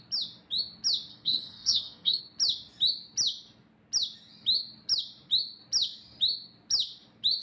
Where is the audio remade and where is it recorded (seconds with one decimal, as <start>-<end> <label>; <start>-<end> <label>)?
0.0-1.1 recorded; 1.1-2.2 remade; 2.2-7.4 recorded